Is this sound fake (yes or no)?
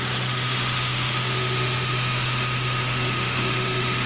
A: yes